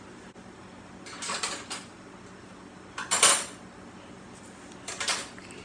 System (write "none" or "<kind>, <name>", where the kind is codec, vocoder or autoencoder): none